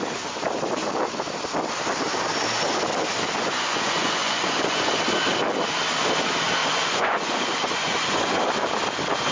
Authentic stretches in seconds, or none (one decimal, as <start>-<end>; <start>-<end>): 0.0-3.4; 4.9-6.6; 8.4-9.3